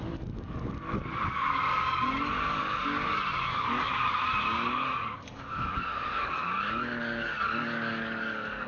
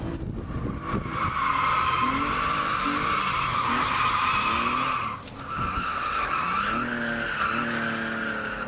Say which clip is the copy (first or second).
first